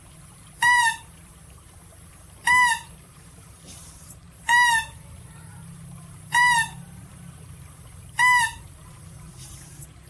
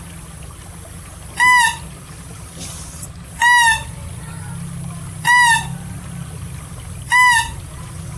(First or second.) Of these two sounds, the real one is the second